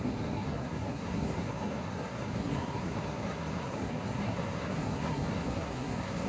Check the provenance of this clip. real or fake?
fake